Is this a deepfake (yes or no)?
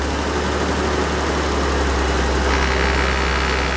no